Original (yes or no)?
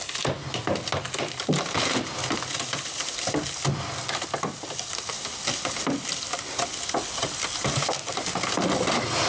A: yes